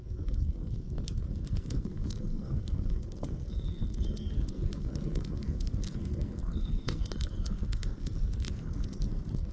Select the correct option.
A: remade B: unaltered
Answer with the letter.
A